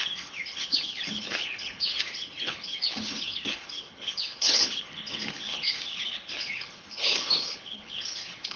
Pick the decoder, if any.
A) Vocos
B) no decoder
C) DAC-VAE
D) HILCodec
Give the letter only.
D